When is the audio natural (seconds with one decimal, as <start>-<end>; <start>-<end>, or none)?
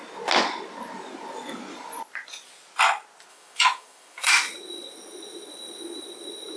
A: 0.0-3.3; 4.3-6.6